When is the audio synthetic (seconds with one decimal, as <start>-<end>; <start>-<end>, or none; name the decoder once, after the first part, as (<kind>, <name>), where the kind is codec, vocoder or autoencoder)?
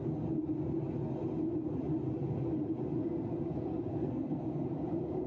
3.9-4.6 (codec, SNAC)